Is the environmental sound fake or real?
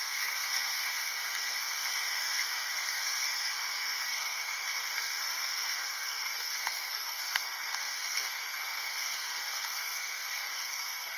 fake